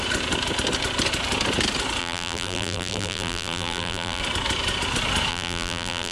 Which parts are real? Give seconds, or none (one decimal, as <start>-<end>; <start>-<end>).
0.0-2.0; 4.2-5.3